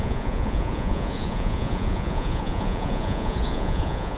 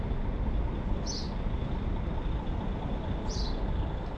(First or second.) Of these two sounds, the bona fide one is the second